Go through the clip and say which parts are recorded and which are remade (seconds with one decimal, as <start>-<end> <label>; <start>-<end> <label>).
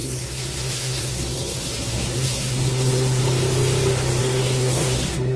0.0-3.2 remade; 3.2-4.2 recorded; 4.2-5.4 remade